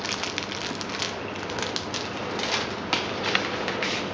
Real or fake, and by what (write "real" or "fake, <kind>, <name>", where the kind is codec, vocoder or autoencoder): real